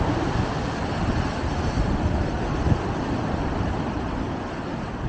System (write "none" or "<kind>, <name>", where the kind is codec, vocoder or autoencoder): none